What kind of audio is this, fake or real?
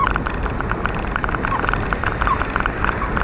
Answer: real